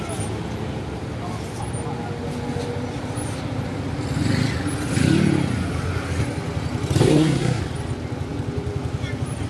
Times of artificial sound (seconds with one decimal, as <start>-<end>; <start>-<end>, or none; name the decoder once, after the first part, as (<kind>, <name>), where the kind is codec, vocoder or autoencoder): 7.0-7.6 (codec, SNAC)